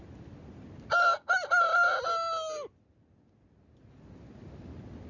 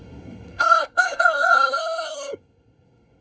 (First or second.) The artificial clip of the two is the second